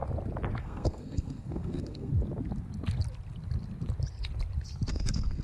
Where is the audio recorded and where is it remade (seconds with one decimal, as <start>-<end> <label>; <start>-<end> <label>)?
0.0-0.6 recorded; 0.6-2.1 remade; 2.1-4.9 recorded; 4.9-5.4 remade